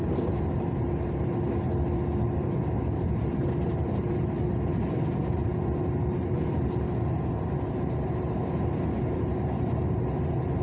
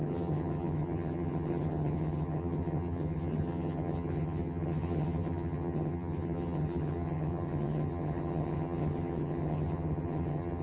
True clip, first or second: first